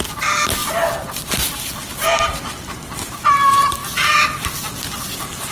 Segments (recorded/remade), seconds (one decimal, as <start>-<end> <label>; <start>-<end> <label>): 0.0-0.6 recorded; 0.6-3.1 remade; 3.1-3.8 recorded; 3.8-4.6 remade; 4.6-5.5 recorded